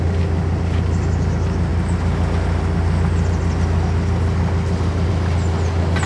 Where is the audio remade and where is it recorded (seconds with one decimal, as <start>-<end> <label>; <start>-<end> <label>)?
0.0-6.1 recorded